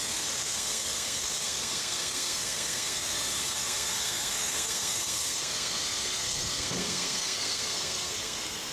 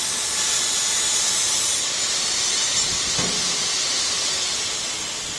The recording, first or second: second